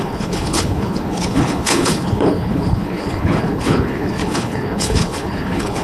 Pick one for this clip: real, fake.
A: fake